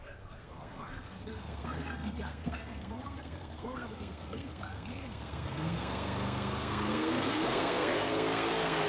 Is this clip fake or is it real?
fake